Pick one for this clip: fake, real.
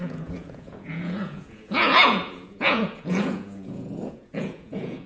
fake